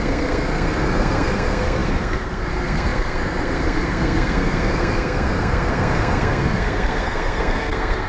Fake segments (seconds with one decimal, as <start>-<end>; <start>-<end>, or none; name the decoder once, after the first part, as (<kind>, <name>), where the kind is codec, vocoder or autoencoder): 0.0-8.1 (codec, SNAC)